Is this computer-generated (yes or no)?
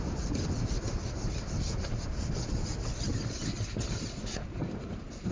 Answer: no